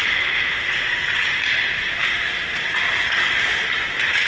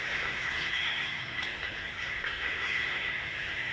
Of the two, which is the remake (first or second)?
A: second